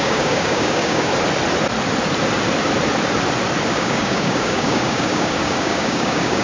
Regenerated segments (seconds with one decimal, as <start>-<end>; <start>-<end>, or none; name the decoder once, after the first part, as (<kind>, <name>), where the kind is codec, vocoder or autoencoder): 0.0-1.1 (codec, DAC); 3.7-6.4